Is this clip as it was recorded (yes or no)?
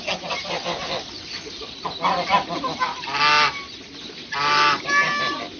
yes